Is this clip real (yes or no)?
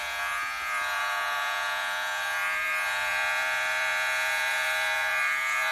no